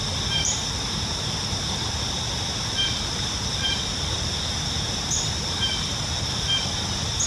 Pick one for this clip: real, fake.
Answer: real